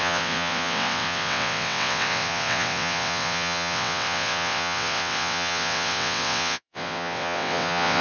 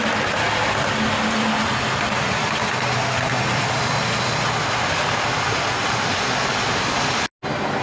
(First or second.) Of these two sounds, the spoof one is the first